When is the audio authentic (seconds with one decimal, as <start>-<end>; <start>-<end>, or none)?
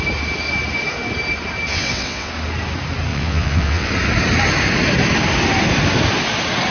0.0-1.7; 2.3-3.1; 3.9-6.7